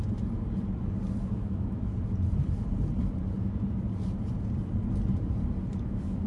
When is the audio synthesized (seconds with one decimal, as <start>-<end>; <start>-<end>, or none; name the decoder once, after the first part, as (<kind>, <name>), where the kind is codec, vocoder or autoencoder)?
1.2-1.9 (autoencoder, DAC-VAE); 5.7-6.3